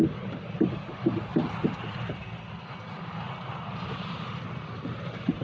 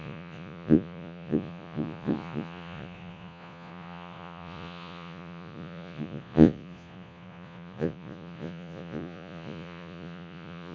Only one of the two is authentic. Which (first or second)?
first